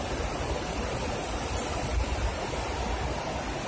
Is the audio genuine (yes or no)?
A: yes